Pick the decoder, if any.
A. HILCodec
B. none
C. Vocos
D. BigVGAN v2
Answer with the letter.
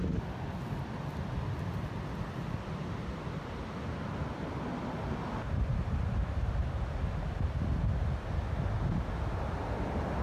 B